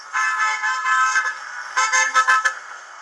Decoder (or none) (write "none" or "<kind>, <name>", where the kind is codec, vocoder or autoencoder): codec, SNAC